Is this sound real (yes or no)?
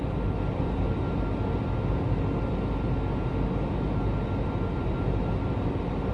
yes